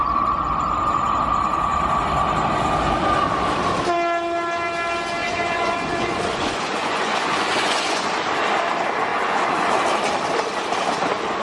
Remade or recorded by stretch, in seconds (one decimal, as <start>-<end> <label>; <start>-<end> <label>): 0.0-5.2 recorded; 5.2-8.1 remade; 8.1-9.1 recorded; 9.1-9.7 remade; 9.7-11.4 recorded